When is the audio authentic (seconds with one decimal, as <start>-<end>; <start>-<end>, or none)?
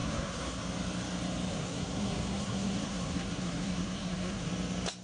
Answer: 0.6-1.5; 4.5-5.0